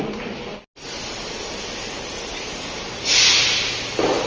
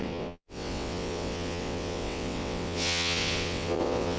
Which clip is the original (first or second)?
first